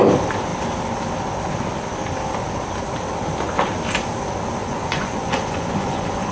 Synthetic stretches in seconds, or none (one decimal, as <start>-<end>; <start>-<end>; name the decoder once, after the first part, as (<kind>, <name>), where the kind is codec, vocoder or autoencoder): 4.6-6.3 (vocoder, Vocos)